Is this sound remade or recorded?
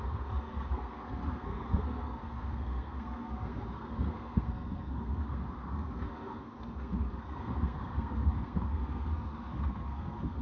remade